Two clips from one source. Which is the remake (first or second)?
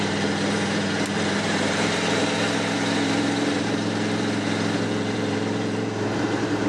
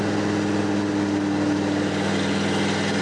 first